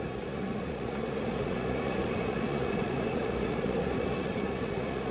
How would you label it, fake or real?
fake